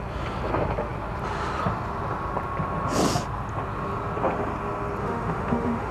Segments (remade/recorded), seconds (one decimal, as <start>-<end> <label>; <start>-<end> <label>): 0.0-5.0 recorded; 5.0-5.9 remade